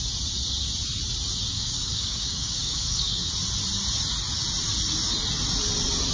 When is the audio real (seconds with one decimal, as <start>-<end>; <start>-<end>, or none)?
0.0-1.5; 3.3-6.1